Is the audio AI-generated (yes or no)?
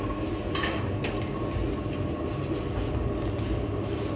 no